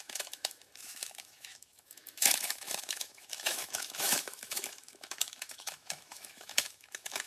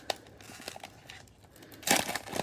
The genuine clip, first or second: second